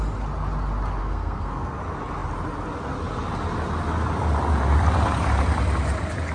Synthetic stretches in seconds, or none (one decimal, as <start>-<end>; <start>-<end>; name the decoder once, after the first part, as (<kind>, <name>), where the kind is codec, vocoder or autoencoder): 1.0-1.8 (codec, SNAC)